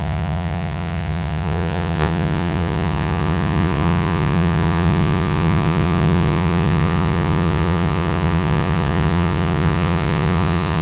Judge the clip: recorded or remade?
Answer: remade